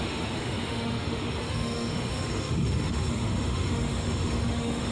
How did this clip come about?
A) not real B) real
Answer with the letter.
A